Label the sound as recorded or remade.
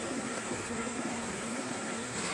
remade